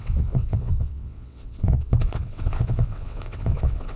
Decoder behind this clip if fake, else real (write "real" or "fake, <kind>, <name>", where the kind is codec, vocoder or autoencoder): fake, vocoder, WaveNeXt